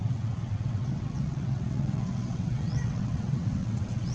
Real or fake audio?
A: fake